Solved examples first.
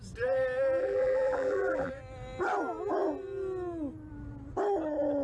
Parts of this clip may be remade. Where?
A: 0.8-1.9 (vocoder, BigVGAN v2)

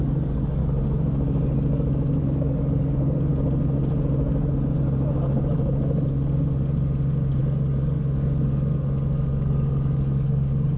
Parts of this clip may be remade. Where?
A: 0.0-0.6 (codec, DAC); 2.2-3.3; 7.4-10.8